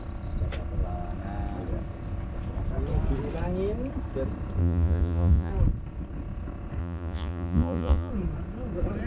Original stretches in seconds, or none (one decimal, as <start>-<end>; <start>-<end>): 0.0-4.6; 5.5-6.8; 8.1-9.1